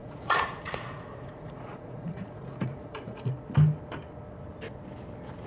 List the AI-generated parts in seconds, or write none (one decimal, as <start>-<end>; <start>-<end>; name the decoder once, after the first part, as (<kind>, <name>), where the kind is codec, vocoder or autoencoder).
0.0-3.3 (vocoder, Vocos)